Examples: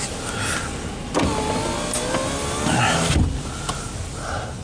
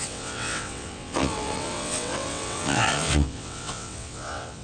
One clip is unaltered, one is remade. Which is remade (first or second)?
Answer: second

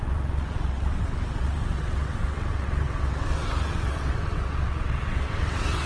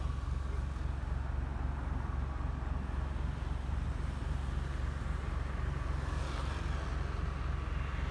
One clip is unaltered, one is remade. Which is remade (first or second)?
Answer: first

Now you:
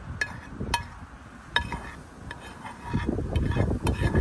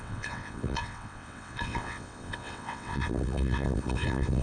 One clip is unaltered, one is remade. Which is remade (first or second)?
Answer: second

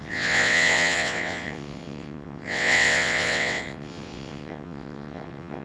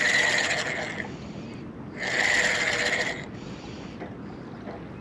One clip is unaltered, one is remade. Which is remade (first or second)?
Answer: first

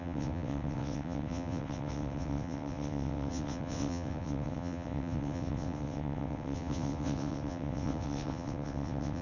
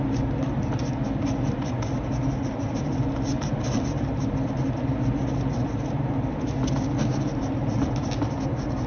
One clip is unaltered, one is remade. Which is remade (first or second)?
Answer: first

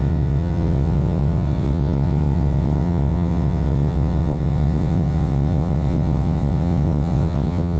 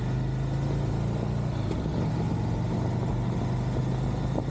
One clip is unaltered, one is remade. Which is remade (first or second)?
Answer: first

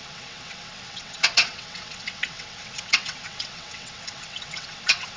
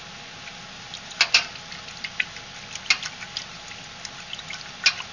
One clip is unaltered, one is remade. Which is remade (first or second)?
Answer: first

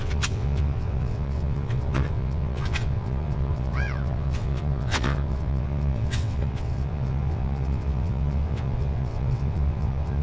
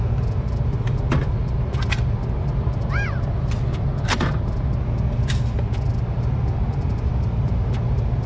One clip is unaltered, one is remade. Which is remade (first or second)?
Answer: first